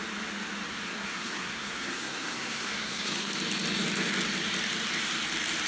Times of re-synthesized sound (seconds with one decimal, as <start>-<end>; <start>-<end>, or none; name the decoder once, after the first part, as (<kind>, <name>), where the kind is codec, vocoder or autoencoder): 0.7-3.3 (codec, SNAC)